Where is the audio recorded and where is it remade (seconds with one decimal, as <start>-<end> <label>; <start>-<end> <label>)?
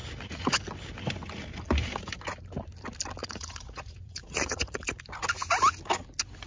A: 0.0-0.6 remade; 0.6-3.2 recorded; 3.2-5.0 remade; 5.0-6.5 recorded